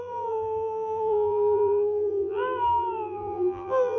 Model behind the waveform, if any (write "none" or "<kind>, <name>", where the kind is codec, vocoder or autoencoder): vocoder, BigVGAN v2